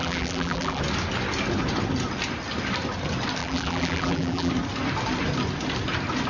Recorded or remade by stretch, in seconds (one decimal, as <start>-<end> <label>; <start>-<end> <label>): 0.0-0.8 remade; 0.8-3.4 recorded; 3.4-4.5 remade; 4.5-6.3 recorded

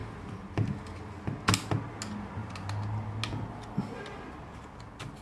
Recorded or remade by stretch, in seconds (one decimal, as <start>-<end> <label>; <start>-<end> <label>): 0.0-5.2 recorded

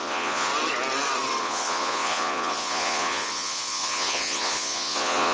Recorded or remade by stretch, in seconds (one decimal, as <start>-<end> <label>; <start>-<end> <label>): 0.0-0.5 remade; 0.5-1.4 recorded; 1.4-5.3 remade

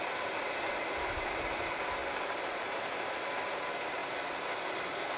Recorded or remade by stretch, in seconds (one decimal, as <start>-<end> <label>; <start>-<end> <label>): 0.0-4.0 remade; 4.0-5.2 recorded